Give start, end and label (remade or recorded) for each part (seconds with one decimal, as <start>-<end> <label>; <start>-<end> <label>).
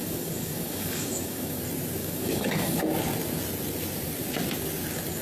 0.0-1.6 remade; 1.6-2.0 recorded; 2.0-2.8 remade; 2.8-5.2 recorded